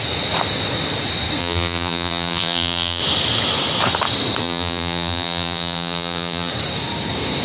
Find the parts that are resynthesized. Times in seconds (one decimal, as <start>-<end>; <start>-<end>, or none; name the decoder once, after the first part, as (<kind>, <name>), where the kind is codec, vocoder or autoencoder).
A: 1.4-3.0 (vocoder, BigVGAN v2); 4.4-6.5